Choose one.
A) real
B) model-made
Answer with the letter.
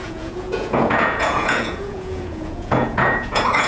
B